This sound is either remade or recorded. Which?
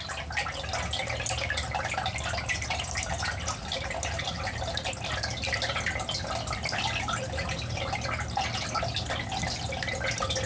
recorded